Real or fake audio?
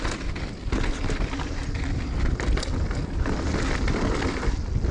real